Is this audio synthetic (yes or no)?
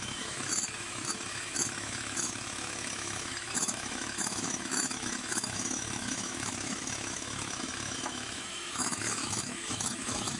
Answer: yes